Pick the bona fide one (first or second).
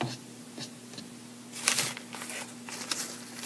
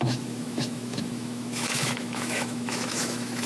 first